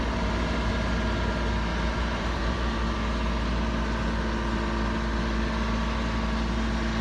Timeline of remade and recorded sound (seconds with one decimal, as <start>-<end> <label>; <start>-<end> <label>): 0.0-1.7 recorded; 1.7-2.8 remade; 2.8-7.0 recorded